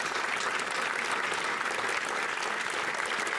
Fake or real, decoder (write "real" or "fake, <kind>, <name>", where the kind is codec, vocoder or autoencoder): real